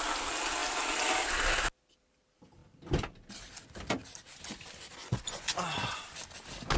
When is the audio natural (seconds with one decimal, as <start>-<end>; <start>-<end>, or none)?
0.0-5.0; 6.0-6.8

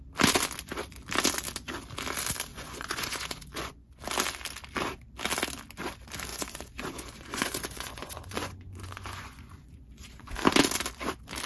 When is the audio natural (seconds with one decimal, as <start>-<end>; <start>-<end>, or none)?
0.0-2.5; 4.0-6.3; 10.3-11.5

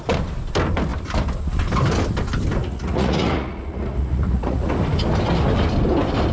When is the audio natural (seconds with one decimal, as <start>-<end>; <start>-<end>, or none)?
0.0-2.6; 4.7-6.3

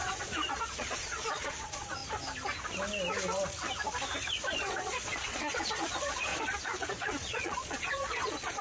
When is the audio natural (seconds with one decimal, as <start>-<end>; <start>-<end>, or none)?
2.0-4.4; 6.3-6.9